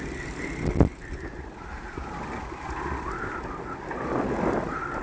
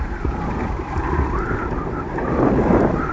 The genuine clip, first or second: first